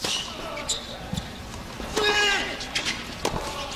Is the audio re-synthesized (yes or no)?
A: no